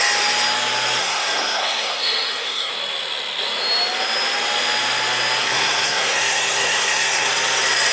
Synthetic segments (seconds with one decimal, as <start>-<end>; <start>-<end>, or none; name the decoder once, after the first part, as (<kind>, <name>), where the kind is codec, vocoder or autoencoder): 1.0-2.7 (codec, SNAC); 5.4-7.3